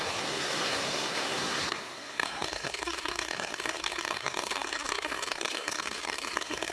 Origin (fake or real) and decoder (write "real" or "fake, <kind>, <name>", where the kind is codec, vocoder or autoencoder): fake, codec, SNAC